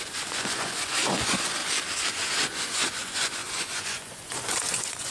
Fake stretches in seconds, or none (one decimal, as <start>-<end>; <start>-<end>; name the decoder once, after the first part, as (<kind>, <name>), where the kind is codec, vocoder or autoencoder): 0.0-1.6 (vocoder, Vocos); 2.1-5.1